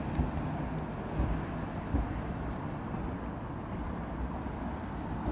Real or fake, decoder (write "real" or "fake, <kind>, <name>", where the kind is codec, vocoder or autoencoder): real